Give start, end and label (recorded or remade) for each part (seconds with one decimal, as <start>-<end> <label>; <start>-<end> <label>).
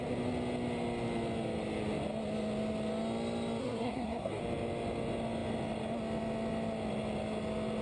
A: 0.0-3.6 recorded; 3.6-4.4 remade; 4.4-7.8 recorded